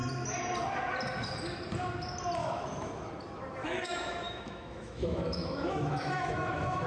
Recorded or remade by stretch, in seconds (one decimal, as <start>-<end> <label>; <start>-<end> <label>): 0.0-2.4 recorded; 2.4-3.1 remade; 3.1-3.6 recorded; 3.6-6.9 remade